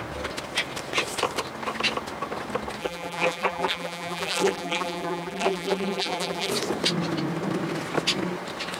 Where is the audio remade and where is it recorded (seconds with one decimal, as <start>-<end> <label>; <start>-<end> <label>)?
0.0-2.8 recorded; 2.8-6.5 remade; 6.5-8.8 recorded